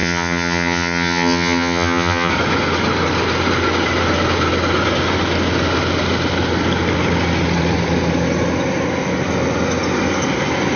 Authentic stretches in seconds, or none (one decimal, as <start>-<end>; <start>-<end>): 2.3-10.8